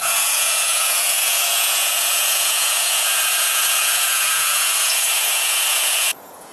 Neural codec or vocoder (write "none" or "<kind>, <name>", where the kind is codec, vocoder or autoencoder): vocoder, Vocos